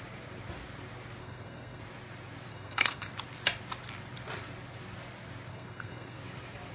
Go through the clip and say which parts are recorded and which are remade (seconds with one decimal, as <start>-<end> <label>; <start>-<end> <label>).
0.0-1.2 recorded; 1.2-1.8 remade; 1.8-2.5 recorded; 2.5-3.1 remade; 3.1-5.5 recorded; 5.5-6.2 remade; 6.2-6.7 recorded